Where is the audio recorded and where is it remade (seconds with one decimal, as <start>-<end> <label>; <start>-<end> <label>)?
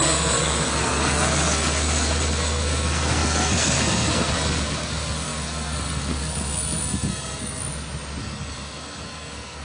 0.0-7.6 remade; 7.6-8.2 recorded; 8.2-9.6 remade